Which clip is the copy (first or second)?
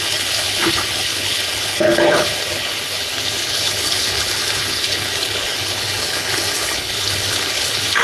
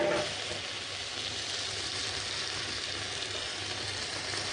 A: first